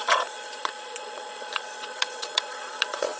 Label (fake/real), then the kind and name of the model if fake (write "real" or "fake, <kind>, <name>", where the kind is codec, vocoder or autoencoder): fake, vocoder, Vocos